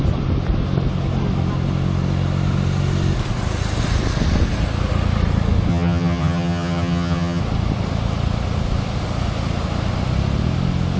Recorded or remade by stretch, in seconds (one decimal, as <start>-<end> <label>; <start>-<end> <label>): 0.0-5.7 recorded; 5.7-7.4 remade; 7.4-11.0 recorded